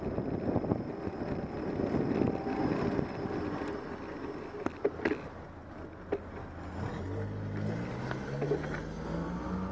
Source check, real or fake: real